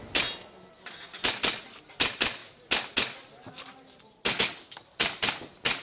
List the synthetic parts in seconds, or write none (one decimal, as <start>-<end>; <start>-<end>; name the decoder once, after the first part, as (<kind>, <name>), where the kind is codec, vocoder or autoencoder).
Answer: none